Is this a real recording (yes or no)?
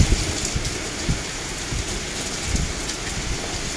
yes